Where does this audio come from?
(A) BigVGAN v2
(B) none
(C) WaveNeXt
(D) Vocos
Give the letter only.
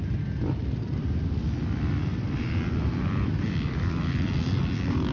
A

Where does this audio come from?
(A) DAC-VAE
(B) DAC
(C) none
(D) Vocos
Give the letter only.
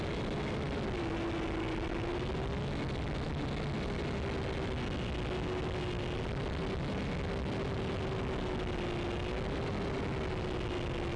C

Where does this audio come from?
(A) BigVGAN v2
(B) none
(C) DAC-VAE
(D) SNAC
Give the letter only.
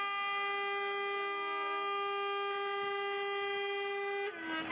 B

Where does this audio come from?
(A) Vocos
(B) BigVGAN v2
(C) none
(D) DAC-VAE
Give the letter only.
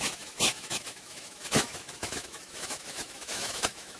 D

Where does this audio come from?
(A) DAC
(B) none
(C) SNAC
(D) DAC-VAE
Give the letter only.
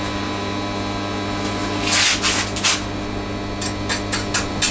B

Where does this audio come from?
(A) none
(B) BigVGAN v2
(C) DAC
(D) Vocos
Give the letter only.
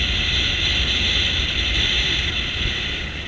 A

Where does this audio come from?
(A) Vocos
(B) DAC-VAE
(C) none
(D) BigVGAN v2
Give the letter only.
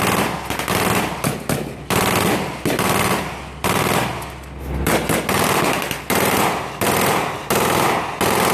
C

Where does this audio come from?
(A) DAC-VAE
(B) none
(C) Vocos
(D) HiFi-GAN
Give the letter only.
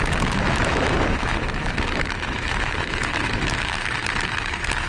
A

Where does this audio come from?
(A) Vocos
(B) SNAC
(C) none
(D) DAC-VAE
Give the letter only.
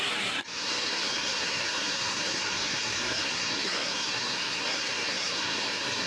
B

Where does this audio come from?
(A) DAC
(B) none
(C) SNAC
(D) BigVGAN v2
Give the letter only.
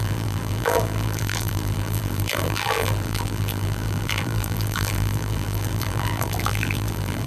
D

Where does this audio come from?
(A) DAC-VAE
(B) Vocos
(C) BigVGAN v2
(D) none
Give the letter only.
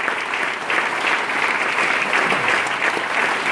D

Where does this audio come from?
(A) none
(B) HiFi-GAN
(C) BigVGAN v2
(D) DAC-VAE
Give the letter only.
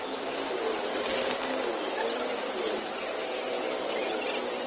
A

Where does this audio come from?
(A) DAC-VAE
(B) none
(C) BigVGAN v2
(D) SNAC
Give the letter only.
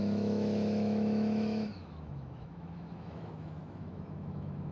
A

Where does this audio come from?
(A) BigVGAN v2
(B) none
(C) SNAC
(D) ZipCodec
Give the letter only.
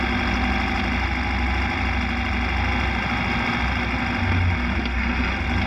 B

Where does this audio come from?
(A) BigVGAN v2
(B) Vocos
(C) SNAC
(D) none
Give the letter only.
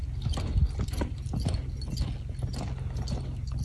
D